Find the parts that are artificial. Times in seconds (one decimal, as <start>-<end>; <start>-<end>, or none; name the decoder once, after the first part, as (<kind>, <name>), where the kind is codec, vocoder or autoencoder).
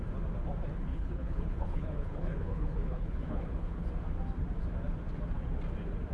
0.9-3.9 (codec, HILCodec)